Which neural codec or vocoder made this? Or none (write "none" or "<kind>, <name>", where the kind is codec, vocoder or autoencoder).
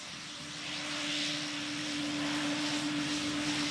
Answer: none